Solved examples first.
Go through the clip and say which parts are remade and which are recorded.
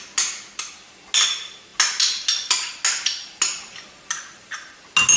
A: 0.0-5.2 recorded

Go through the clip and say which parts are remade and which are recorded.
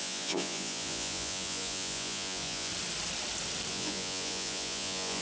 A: 0.0-2.7 remade; 2.7-3.7 recorded; 3.7-5.2 remade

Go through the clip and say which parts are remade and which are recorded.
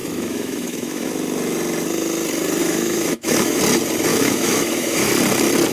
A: 0.0-1.1 remade; 1.1-2.6 recorded; 2.6-3.6 remade; 3.6-4.1 recorded; 4.1-5.1 remade; 5.1-5.7 recorded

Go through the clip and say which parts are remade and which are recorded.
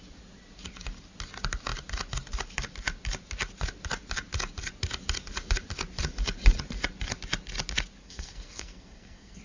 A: 0.0-8.0 recorded; 8.0-9.4 remade